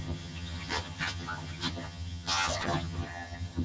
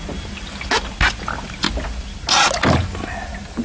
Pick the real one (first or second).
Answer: second